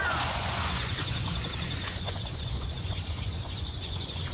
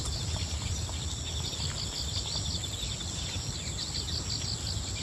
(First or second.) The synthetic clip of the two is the first